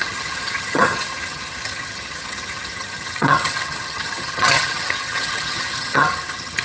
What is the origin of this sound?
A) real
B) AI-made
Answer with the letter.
B